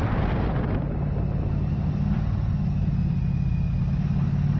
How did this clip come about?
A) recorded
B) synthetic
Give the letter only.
A